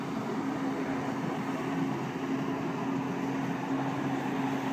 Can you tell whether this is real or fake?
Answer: real